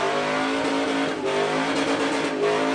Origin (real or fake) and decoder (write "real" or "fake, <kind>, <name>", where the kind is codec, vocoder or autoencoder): real